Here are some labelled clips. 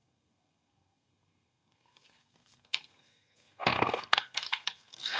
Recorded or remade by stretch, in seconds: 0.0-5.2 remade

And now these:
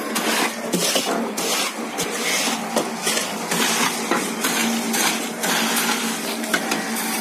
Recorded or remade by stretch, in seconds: 0.0-7.2 recorded

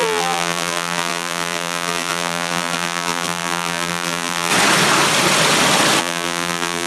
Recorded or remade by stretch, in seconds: 0.0-4.5 remade; 4.5-6.0 recorded; 6.0-6.9 remade

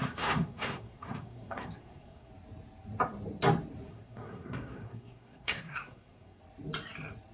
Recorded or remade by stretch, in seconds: 0.0-2.3 remade; 2.3-3.9 recorded; 3.9-6.4 remade; 6.4-7.3 recorded

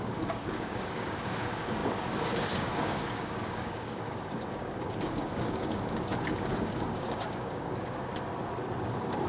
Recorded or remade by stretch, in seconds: 0.0-8.1 remade; 8.1-8.9 recorded; 8.9-9.3 remade

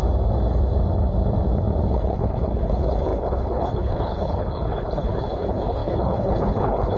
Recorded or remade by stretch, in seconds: 0.0-1.9 recorded; 1.9-7.0 remade

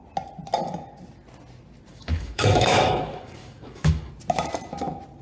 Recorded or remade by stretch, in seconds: 0.0-1.9 recorded; 1.9-4.1 remade; 4.1-5.2 recorded

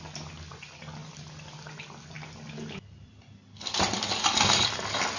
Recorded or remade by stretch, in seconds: 0.0-5.2 recorded